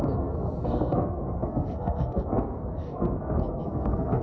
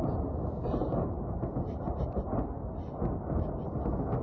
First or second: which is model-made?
first